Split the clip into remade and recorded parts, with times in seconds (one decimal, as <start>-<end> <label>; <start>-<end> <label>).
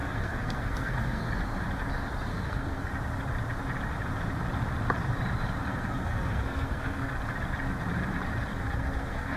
0.0-1.3 remade; 1.3-2.3 recorded; 2.3-2.9 remade; 2.9-5.7 recorded; 5.7-7.1 remade; 7.1-8.5 recorded; 8.5-9.4 remade